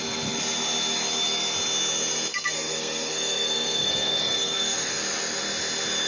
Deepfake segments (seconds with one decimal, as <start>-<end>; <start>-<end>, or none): 2.3-5.0